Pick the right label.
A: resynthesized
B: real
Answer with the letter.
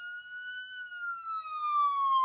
A